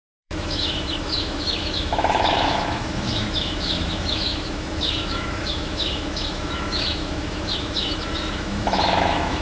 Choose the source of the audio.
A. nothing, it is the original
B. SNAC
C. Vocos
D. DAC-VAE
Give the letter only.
D